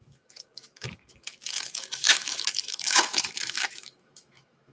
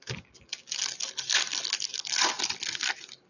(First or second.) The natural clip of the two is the second